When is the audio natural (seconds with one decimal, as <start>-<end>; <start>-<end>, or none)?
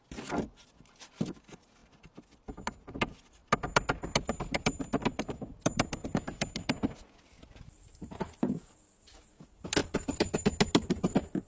0.0-9.8; 10.4-11.5